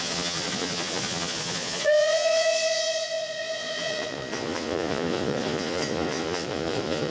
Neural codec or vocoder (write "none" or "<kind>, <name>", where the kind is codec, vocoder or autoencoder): vocoder, Vocos